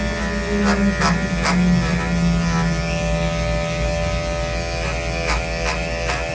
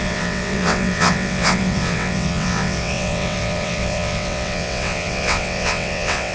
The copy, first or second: second